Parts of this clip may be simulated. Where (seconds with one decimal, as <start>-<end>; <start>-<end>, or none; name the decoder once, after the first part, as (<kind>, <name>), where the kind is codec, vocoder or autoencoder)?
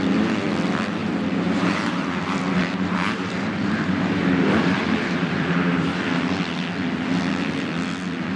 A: 1.0-2.0 (vocoder, BigVGAN v2); 2.6-6.0